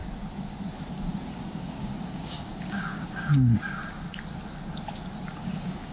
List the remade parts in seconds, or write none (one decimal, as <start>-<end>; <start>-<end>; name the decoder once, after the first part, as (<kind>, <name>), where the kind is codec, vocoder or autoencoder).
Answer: 1.3-3.8 (codec, DAC); 5.4-5.9